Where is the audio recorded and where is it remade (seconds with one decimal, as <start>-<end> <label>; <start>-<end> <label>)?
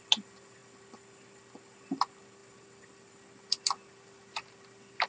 0.0-5.1 recorded